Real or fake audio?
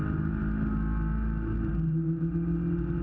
real